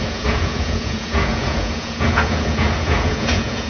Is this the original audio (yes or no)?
no